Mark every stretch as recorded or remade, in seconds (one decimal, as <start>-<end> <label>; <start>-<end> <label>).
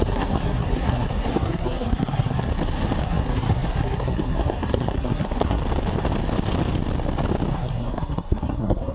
0.0-2.5 remade; 2.5-3.0 recorded; 3.0-5.6 remade; 5.6-7.5 recorded; 7.5-8.9 remade